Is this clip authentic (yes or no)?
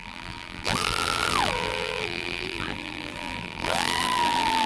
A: no